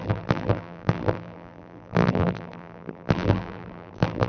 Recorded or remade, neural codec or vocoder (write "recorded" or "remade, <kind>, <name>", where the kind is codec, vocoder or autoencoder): remade, vocoder, BigVGAN v2